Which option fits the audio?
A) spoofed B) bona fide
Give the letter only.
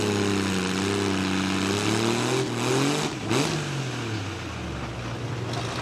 B